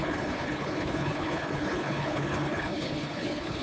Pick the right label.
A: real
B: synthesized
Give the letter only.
B